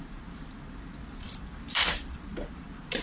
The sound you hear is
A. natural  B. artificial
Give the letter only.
B